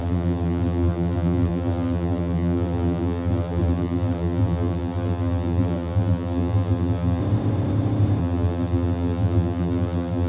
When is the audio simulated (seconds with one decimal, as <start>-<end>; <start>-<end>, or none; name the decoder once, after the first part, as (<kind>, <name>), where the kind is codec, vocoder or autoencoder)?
0.0-7.2 (vocoder, BigVGAN v2); 8.2-10.3